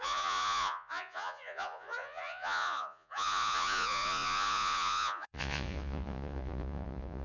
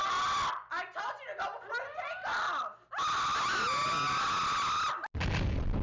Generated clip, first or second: first